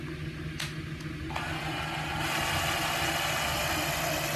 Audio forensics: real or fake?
real